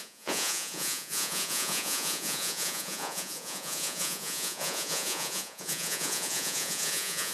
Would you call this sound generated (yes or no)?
yes